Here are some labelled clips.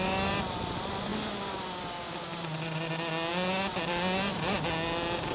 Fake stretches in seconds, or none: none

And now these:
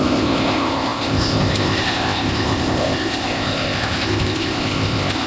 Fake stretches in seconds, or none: 0.0-5.3 (codec, ZipCodec)

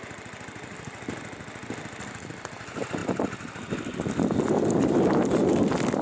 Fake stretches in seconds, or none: none

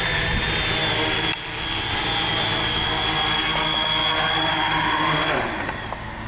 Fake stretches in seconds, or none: none

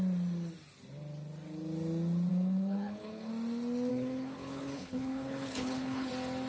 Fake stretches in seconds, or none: 2.3-3.3 (codec, HILCodec); 3.9-6.1

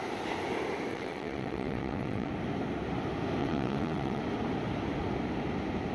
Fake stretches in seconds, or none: 0.9-2.3 (vocoder, WaveNeXt); 3.4-4.2

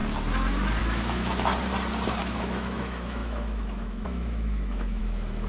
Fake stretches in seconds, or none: 0.8-1.5 (autoencoder, DAC-VAE); 2.2-5.5